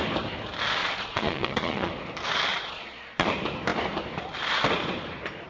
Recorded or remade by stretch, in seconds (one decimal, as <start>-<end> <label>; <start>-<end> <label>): 0.0-0.8 recorded; 0.8-1.9 remade; 1.9-2.5 recorded; 2.5-3.3 remade; 3.3-5.5 recorded